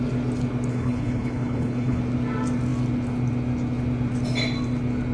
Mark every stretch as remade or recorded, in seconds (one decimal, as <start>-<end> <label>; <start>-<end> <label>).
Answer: 0.0-0.7 recorded; 0.7-2.0 remade; 2.0-5.1 recorded